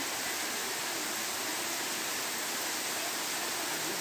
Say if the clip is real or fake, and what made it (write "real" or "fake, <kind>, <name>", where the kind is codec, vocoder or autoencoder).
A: real